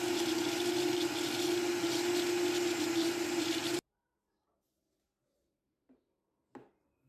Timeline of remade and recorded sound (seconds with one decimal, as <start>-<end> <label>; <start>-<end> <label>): 0.0-7.1 recorded